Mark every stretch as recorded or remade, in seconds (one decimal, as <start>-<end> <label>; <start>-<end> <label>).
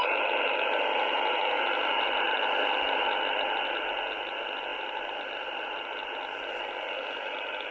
0.0-7.7 recorded